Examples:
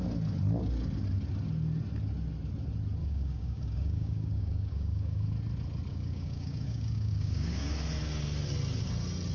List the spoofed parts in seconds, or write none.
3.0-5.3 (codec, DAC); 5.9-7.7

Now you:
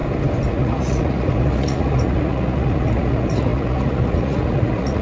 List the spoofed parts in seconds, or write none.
0.5-5.0 (vocoder, Vocos)

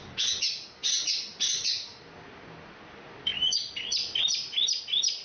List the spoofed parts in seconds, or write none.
none

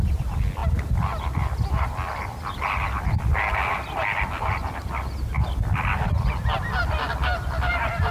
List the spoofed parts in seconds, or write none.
none

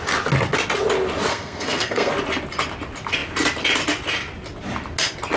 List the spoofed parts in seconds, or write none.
1.3-2.1 (codec, SNAC)